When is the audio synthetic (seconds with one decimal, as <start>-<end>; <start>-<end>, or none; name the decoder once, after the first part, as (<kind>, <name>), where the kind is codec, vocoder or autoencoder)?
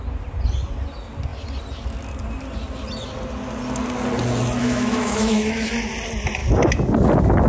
4.6-5.7 (autoencoder, DAC-VAE)